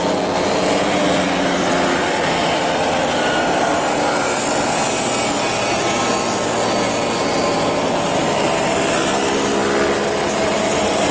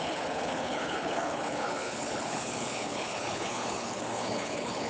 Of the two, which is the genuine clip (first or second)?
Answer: first